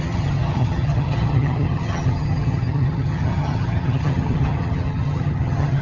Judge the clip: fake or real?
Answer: fake